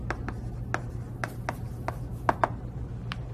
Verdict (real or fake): real